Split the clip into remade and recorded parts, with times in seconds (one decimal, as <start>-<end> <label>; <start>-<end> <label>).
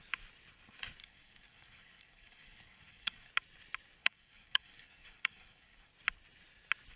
0.0-1.0 recorded; 1.0-3.3 remade; 3.3-4.0 recorded; 4.0-5.9 remade; 5.9-7.0 recorded